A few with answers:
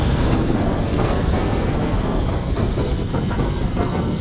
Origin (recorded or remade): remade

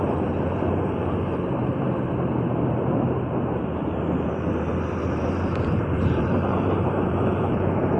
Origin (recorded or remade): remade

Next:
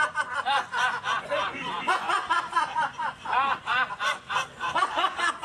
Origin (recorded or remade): remade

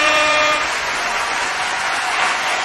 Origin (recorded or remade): remade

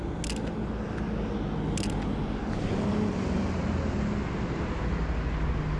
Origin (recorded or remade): recorded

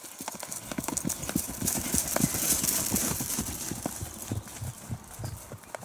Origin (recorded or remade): recorded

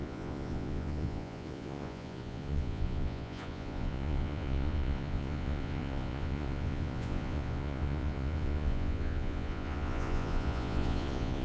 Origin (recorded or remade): remade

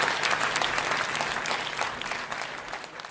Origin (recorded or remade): recorded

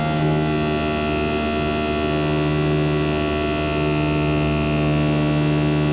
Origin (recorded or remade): recorded